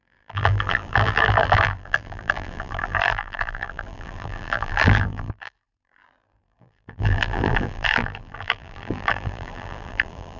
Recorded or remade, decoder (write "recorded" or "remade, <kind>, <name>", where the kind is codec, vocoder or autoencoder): remade, vocoder, BigVGAN v2